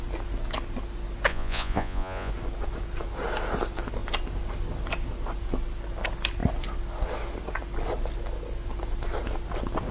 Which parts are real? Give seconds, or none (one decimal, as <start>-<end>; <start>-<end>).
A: 0.0-1.3; 2.3-9.9